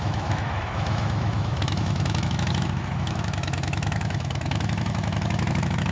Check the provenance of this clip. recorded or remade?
remade